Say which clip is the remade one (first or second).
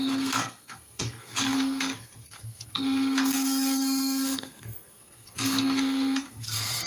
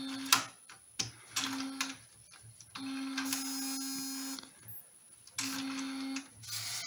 first